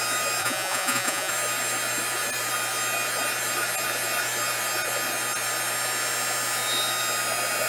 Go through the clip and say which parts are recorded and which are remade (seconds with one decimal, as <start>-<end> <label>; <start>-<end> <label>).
0.0-0.4 recorded; 0.4-1.3 remade; 1.3-7.7 recorded